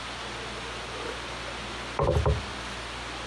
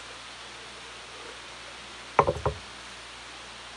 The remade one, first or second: first